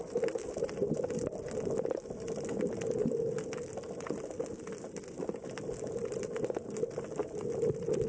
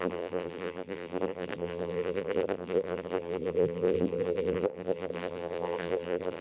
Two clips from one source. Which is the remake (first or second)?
second